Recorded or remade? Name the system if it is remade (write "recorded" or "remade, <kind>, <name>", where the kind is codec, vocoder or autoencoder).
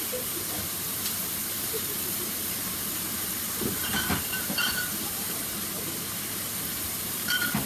remade, vocoder, BigVGAN v2